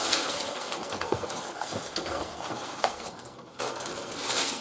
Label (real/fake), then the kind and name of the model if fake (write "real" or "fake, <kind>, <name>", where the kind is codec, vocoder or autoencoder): fake, codec, SNAC